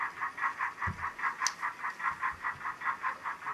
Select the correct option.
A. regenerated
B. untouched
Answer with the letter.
B